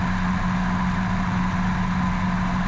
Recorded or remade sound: recorded